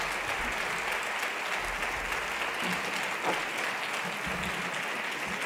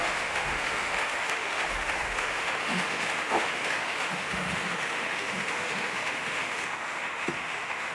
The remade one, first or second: second